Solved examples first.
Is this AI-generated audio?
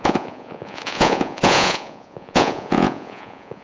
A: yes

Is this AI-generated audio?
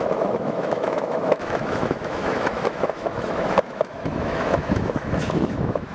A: yes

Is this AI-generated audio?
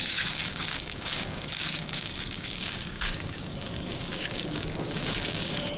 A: yes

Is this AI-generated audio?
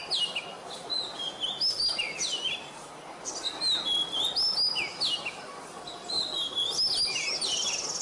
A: no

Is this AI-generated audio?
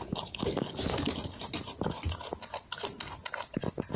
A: no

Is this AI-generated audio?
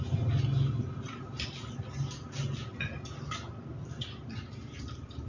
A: no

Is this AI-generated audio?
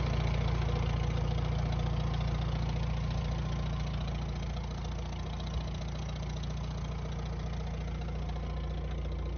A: no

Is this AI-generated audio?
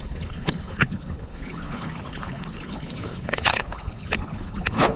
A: yes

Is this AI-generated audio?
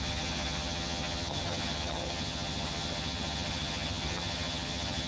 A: yes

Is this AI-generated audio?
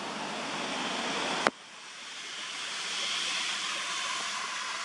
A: no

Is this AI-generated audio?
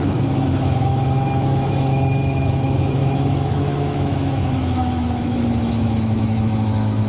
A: yes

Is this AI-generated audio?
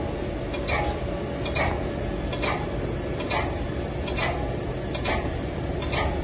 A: no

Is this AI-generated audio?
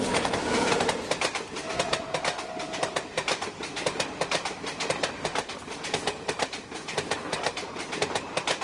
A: no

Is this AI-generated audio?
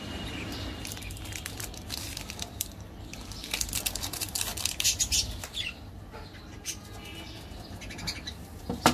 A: yes